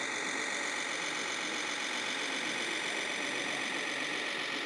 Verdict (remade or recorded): recorded